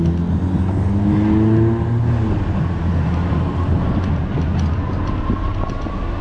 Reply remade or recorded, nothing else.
recorded